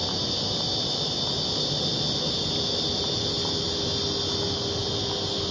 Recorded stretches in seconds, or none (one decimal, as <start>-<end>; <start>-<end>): 0.0-5.5